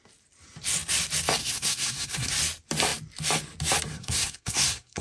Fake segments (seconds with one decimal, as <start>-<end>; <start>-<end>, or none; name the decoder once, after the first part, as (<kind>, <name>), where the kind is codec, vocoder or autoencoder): 1.4-2.3 (codec, SNAC); 3.9-5.0